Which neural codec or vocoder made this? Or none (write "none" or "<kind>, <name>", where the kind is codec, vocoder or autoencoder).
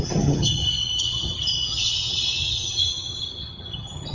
vocoder, HiFi-GAN